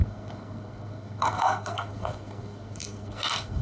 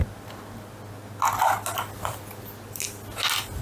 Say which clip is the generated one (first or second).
first